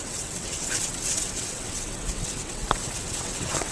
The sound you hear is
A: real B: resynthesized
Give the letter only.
B